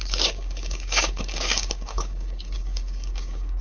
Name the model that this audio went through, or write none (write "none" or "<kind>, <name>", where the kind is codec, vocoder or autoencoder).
codec, DAC